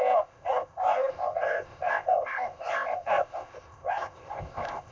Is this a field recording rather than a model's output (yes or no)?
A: no